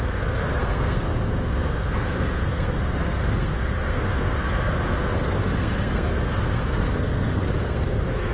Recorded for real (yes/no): no